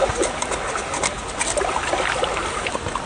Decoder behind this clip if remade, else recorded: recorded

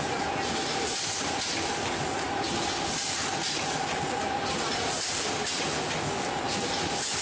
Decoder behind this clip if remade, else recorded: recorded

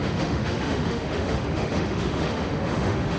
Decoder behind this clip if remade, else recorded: remade, autoencoder, DAC-VAE